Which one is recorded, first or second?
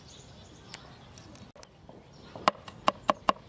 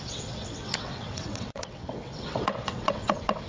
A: first